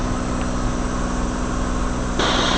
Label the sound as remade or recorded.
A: recorded